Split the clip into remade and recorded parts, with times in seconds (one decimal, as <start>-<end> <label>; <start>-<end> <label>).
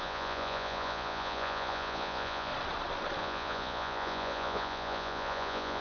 0.0-2.5 remade; 2.5-3.2 recorded; 3.2-5.8 remade